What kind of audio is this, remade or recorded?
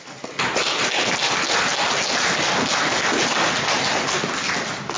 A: recorded